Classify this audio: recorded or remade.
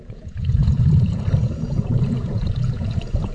remade